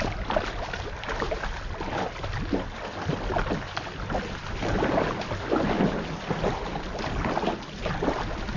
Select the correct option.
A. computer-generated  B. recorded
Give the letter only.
B